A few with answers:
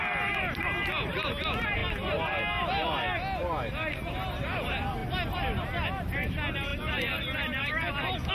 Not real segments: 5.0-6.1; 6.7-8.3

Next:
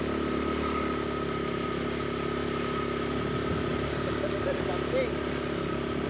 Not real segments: 3.7-4.7